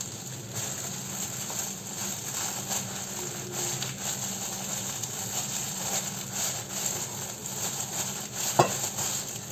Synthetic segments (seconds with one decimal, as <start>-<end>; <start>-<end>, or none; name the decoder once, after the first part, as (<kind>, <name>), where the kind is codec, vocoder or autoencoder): none